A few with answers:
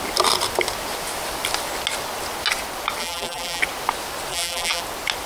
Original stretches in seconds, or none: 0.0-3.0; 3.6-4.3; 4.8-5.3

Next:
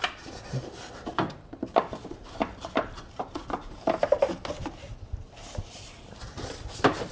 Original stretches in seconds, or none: 0.0-1.1; 4.3-4.9; 6.2-7.1

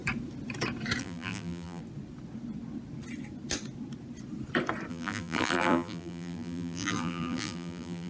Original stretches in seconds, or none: 0.0-1.0; 1.8-4.9